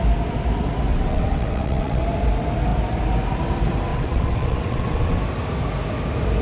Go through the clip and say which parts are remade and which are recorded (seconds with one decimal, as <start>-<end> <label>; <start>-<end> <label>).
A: 0.0-0.9 recorded; 0.9-2.0 remade; 2.0-3.9 recorded; 3.9-5.2 remade; 5.2-6.4 recorded